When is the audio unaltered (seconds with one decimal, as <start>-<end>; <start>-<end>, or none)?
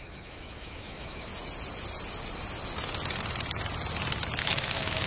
1.3-4.4